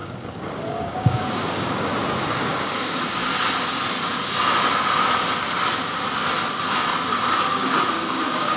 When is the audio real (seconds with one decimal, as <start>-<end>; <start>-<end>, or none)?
1.9-2.4; 3.2-7.5